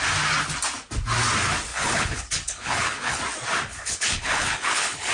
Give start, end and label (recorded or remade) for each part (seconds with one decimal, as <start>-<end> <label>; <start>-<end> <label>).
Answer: 0.0-1.7 recorded; 1.7-3.2 remade; 3.2-3.7 recorded; 3.7-5.1 remade